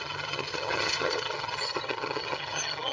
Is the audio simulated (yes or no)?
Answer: yes